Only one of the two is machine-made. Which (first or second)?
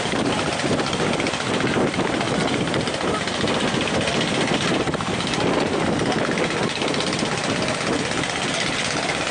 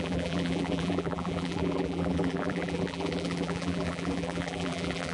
second